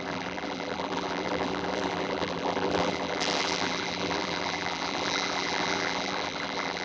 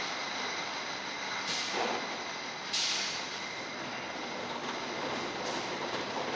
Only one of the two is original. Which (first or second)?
second